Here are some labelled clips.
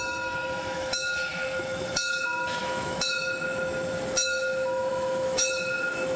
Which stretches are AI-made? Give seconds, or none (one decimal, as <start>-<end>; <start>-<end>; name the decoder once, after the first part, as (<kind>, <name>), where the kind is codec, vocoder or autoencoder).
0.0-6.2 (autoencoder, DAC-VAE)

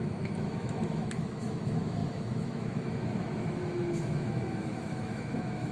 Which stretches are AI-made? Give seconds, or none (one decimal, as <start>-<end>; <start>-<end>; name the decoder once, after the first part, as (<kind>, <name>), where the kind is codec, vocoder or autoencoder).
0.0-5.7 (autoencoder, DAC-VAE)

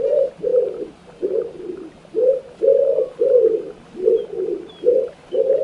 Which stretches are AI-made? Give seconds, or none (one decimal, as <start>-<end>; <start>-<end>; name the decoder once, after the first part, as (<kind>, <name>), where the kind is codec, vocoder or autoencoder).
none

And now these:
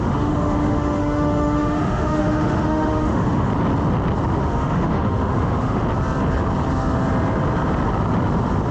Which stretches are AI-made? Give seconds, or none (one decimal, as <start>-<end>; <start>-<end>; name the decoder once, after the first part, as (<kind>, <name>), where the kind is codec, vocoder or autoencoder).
0.0-3.5 (autoencoder, DAC-VAE); 4.4-5.8

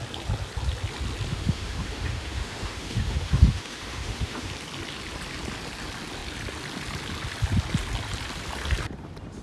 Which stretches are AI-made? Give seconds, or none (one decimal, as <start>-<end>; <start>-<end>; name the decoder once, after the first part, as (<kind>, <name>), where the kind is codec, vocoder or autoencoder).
1.3-4.5 (autoencoder, DAC-VAE)